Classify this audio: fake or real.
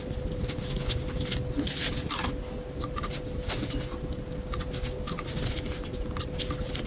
real